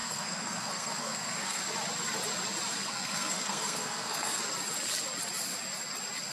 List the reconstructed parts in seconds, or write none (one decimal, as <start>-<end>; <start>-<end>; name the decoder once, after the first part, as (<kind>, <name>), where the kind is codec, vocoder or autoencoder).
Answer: 0.0-1.6 (codec, SNAC); 2.8-4.4